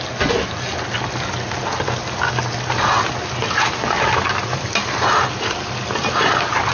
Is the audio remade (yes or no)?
no